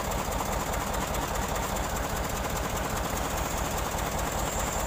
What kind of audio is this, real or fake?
real